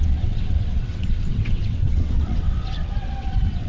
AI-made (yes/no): yes